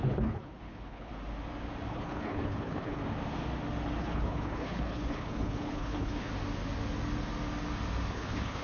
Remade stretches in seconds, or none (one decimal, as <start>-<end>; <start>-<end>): 0.0-1.1; 1.9-3.0; 4.0-6.3; 8.1-8.6